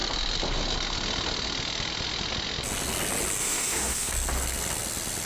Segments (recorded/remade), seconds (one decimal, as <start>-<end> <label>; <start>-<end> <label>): 0.0-3.4 recorded; 3.4-4.1 remade; 4.1-5.3 recorded